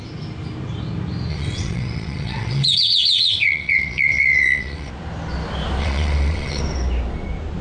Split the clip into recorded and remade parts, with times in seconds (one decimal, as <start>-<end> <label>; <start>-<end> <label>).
0.0-1.3 recorded; 1.3-4.9 remade; 4.9-5.8 recorded; 5.8-6.6 remade; 6.6-7.6 recorded